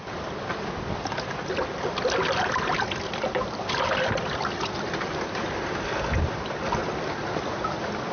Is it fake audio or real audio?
real